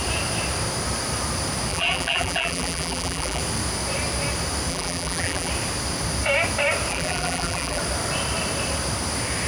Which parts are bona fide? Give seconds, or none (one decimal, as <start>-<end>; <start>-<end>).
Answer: 0.0-1.7; 3.4-4.7; 5.5-6.9; 7.8-9.5